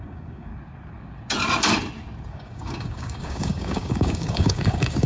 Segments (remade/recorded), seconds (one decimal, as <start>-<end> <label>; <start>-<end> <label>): 0.0-0.5 remade; 0.5-2.3 recorded; 2.3-5.1 remade